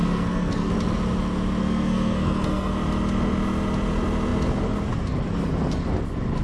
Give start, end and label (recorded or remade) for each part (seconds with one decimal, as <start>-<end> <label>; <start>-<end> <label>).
0.0-0.7 remade; 0.7-1.6 recorded; 1.6-2.7 remade; 2.7-6.4 recorded